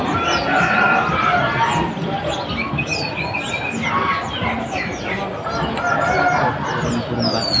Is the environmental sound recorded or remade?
recorded